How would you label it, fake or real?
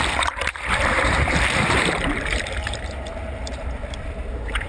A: fake